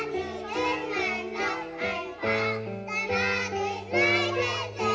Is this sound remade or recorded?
recorded